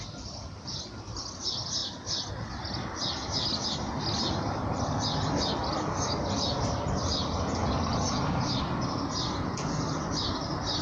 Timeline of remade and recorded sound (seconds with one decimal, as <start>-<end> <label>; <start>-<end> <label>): 0.0-10.8 recorded